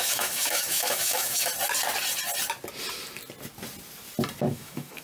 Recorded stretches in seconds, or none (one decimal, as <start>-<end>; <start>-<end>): 1.5-4.5